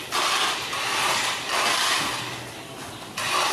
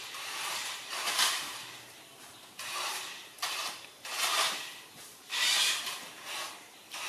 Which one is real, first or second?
first